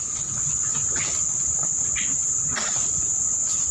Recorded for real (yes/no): yes